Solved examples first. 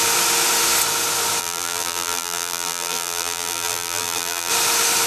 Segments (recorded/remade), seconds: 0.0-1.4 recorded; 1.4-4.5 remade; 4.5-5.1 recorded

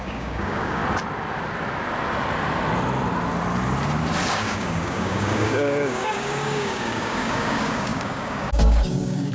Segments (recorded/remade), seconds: 0.0-0.8 remade; 0.8-4.3 recorded; 4.3-9.3 remade

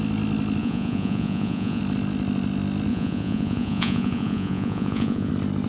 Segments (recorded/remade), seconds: 0.0-0.6 recorded; 0.6-1.8 remade; 1.8-2.9 recorded; 2.9-5.3 remade; 5.3-5.7 recorded